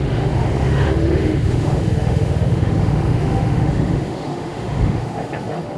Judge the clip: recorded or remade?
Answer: remade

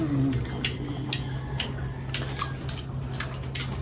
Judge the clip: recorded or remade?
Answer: recorded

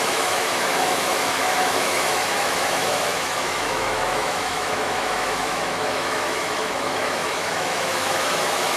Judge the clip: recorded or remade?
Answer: remade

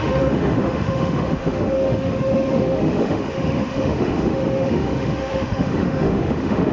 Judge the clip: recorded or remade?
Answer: remade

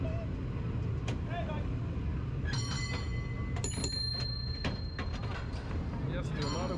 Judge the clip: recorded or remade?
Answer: recorded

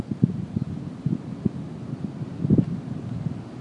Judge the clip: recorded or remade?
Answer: recorded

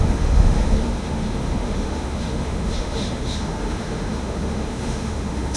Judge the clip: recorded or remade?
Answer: remade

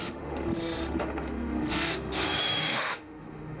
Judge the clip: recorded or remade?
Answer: remade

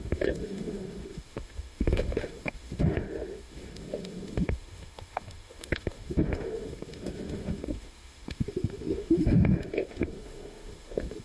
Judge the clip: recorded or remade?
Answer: remade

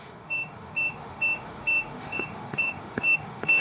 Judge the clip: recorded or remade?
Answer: remade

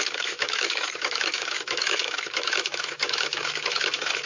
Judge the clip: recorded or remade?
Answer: remade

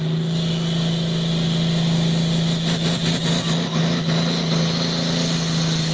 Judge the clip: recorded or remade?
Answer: recorded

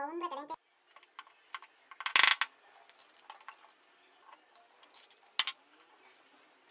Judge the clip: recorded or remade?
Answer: recorded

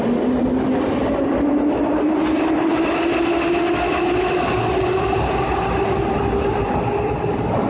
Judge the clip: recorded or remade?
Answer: recorded